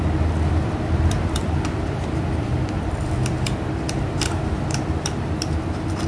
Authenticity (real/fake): fake